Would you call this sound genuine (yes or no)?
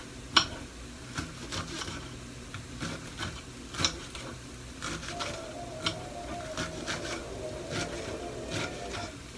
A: yes